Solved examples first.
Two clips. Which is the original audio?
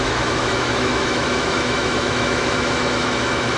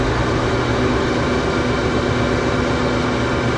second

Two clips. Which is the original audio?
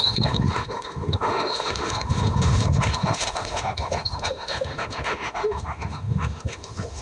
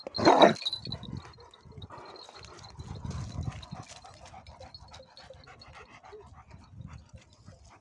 second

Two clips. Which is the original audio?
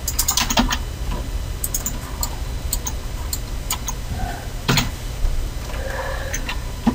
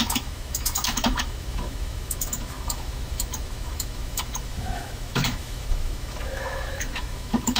first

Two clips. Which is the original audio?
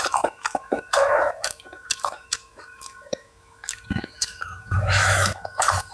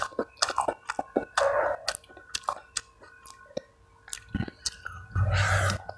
second